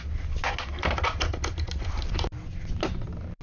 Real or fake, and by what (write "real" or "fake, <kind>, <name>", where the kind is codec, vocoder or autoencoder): real